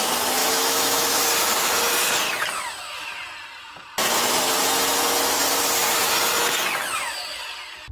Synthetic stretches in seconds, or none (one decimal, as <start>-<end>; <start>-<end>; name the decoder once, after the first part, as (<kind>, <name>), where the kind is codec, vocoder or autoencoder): 0.4-1.2 (autoencoder, DAC-VAE)